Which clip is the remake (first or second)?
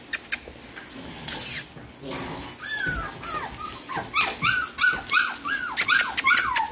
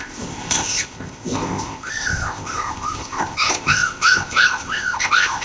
second